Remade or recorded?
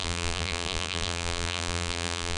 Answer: remade